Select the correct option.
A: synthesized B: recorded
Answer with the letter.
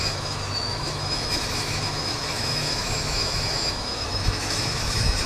A